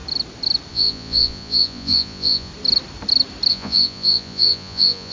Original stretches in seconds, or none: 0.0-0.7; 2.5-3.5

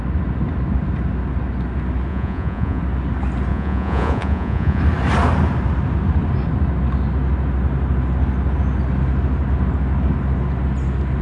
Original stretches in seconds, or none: 0.0-2.1; 2.8-3.5; 4.8-11.2